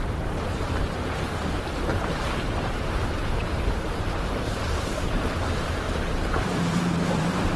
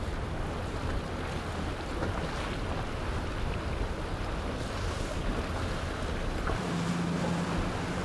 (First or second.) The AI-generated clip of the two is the first